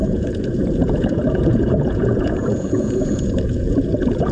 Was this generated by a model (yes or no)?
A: yes